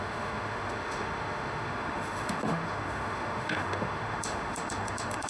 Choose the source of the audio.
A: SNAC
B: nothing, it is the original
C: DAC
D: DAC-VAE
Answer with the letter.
D